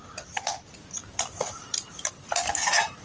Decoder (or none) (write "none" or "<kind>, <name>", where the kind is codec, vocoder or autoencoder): none